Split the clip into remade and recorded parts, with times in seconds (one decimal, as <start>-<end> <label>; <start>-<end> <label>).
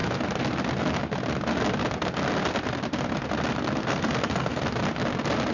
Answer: 0.0-3.8 recorded; 3.8-4.6 remade; 4.6-5.5 recorded